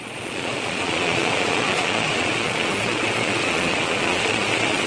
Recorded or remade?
remade